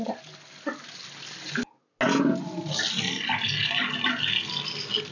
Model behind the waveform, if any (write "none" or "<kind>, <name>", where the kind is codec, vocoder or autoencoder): none